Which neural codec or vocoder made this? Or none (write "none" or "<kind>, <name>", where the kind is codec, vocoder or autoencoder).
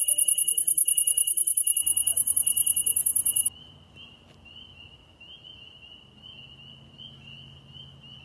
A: none